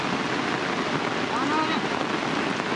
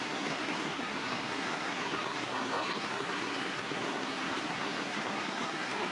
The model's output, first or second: second